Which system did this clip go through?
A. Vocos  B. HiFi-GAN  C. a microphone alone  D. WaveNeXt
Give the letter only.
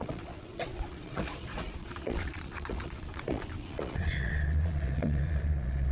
A